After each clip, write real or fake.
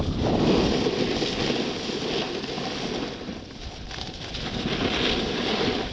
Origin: real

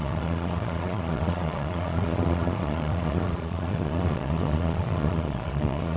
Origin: fake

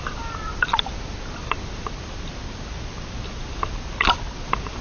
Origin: real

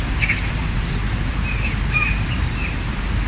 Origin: fake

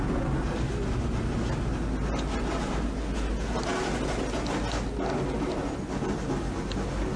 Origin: real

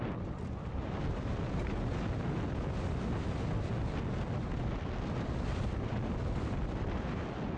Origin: real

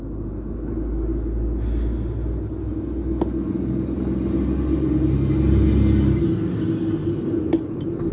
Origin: real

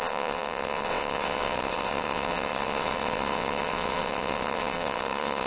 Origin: fake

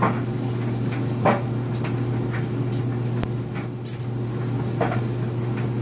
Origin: real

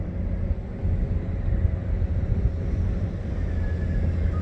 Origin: real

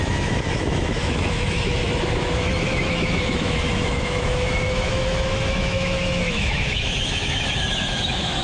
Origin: fake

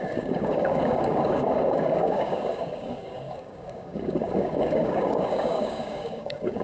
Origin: fake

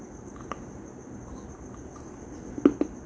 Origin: real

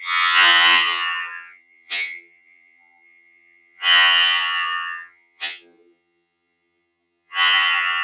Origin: fake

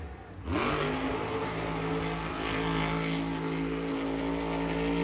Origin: real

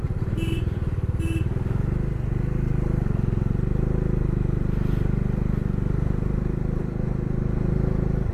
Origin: real